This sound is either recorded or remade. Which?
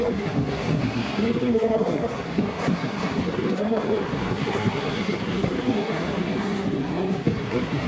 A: remade